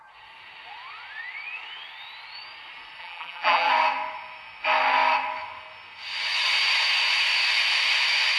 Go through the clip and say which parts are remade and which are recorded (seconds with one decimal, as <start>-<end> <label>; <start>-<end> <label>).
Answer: 0.0-3.0 recorded; 3.0-3.7 remade; 3.7-8.4 recorded